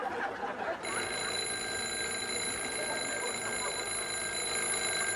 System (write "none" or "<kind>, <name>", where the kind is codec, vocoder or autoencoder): none